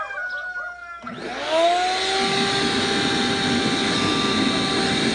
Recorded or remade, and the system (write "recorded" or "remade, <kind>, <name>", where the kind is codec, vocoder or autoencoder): recorded